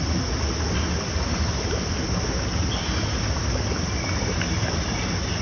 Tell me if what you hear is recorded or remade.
recorded